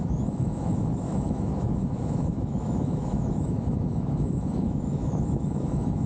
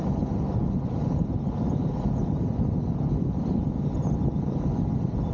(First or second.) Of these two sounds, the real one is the second